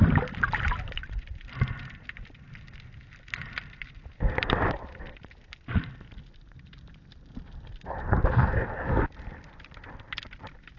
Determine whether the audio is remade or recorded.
remade